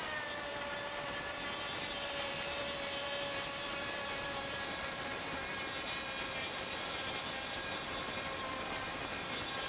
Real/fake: fake